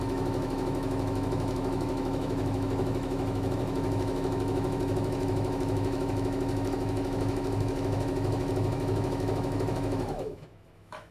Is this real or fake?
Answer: fake